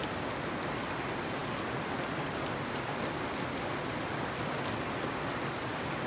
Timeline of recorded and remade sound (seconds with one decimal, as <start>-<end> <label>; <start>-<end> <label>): 0.0-6.1 recorded